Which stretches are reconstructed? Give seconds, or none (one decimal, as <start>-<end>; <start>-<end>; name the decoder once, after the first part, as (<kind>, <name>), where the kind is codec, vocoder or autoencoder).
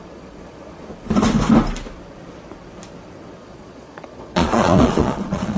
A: 0.0-0.9 (vocoder, Vocos); 3.4-5.6